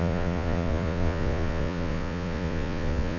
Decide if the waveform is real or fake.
fake